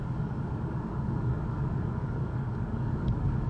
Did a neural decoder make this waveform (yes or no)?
yes